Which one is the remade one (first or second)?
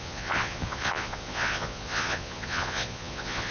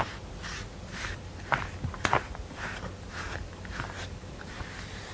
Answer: first